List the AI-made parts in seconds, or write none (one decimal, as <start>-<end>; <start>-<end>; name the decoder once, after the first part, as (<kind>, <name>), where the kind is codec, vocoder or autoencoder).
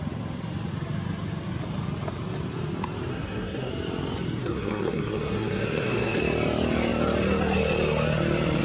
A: 3.1-3.7 (codec, SNAC); 4.4-6.2